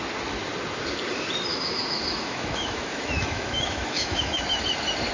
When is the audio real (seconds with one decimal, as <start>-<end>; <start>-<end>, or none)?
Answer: 0.0-1.5; 4.6-5.1